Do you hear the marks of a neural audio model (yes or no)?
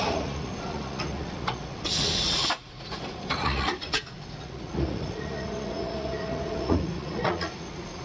yes